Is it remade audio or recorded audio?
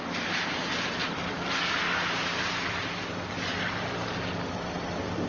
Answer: recorded